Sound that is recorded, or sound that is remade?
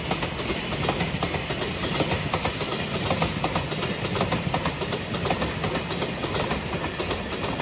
recorded